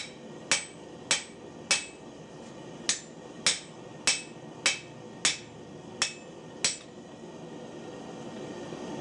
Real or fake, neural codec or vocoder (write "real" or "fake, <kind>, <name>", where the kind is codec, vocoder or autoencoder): real